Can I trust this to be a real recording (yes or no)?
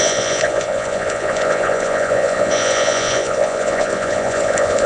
no